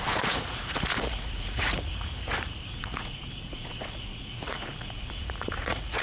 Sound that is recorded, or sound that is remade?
remade